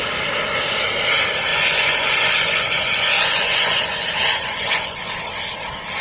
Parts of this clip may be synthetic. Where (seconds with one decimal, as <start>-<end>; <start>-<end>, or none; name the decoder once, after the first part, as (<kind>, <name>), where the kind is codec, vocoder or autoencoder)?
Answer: 1.5-5.1 (vocoder, Vocos)